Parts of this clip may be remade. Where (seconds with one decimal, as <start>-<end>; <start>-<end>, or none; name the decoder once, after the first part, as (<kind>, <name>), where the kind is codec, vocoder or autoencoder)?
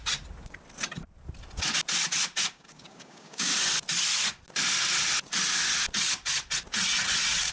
2.5-3.5 (codec, DAC)